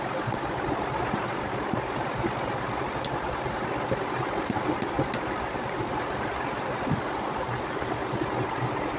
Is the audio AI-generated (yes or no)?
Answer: no